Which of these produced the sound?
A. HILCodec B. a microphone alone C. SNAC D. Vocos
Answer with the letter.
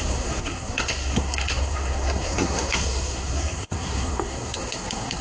C